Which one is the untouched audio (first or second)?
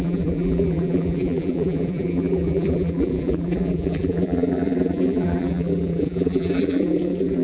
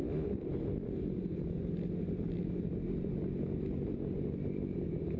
second